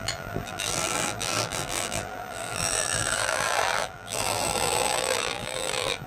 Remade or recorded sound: remade